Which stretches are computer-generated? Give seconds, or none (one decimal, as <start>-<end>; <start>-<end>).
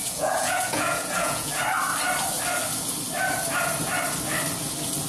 0.0-1.6